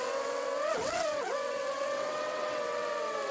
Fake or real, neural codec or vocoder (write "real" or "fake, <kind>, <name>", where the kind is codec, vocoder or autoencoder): fake, vocoder, WaveNeXt